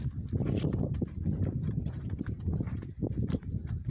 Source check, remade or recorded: remade